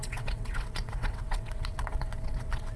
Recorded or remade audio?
remade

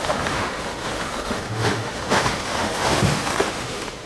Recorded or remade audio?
remade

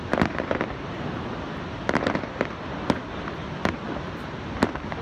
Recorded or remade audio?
recorded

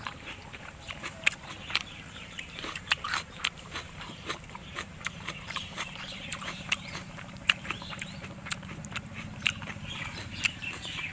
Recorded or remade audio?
remade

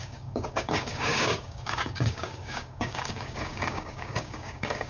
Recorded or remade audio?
remade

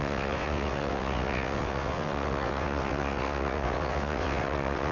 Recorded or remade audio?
remade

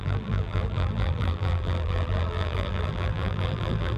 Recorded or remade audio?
remade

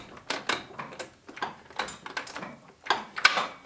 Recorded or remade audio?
recorded